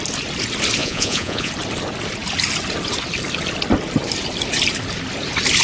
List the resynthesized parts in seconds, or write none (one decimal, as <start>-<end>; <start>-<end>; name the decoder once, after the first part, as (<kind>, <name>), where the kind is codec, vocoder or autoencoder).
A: 0.8-1.5 (vocoder, Vocos)